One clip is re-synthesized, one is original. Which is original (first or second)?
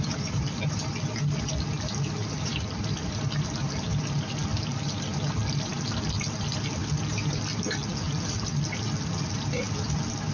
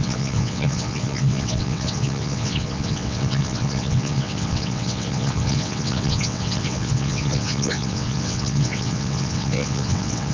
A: first